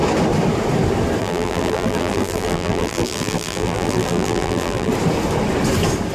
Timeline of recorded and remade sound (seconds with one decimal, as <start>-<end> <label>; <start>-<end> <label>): 0.0-1.2 recorded; 1.2-4.9 remade; 4.9-6.1 recorded